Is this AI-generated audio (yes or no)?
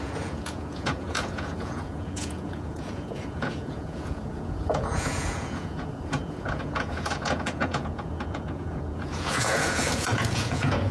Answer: yes